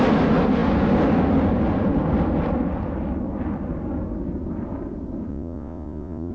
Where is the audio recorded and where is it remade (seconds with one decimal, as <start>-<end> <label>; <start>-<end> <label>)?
0.0-5.3 recorded; 5.3-6.3 remade